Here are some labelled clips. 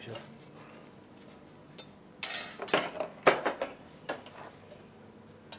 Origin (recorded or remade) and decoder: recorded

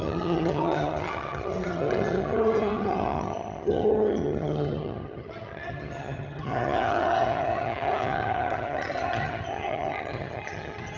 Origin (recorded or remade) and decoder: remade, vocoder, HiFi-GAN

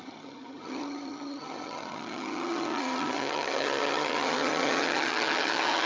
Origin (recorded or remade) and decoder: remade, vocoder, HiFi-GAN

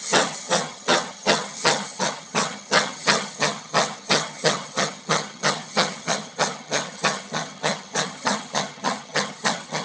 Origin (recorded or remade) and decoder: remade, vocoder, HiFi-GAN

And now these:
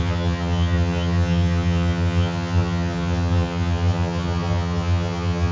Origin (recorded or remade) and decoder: remade, vocoder, HiFi-GAN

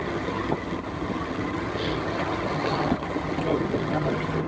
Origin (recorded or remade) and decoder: remade, vocoder, HiFi-GAN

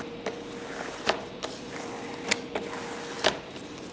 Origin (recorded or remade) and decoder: recorded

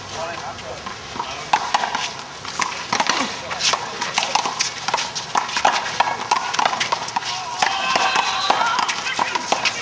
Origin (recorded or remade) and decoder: recorded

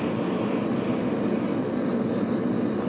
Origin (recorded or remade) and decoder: recorded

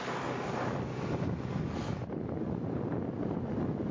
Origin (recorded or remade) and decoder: recorded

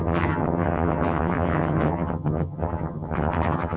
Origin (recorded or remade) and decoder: remade, vocoder, HiFi-GAN